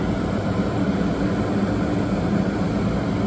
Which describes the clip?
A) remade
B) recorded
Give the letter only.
B